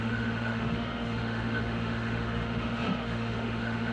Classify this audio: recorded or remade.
remade